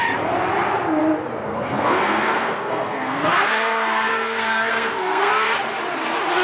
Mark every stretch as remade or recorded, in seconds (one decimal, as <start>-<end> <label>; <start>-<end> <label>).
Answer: 0.0-1.5 recorded; 1.5-5.3 remade; 5.3-6.4 recorded